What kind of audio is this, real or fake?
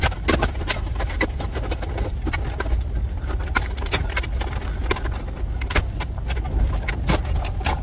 real